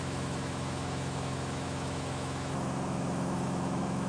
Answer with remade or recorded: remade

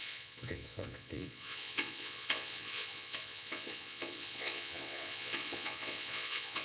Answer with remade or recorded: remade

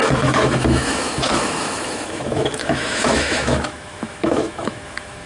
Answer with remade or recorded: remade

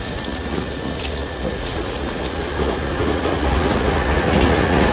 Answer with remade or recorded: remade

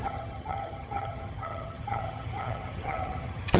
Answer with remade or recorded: remade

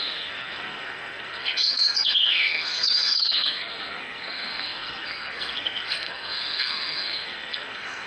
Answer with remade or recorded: remade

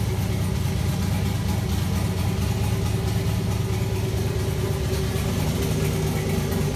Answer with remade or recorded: recorded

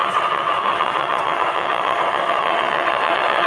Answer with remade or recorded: remade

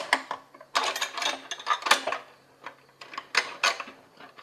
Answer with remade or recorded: recorded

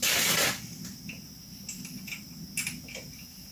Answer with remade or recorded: recorded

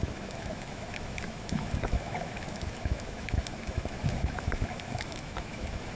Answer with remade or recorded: remade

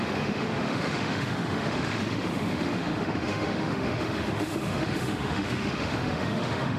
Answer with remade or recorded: remade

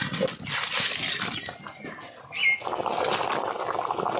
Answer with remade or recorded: recorded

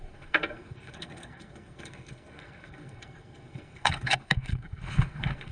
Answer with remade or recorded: remade